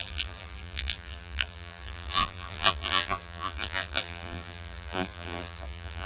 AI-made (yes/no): yes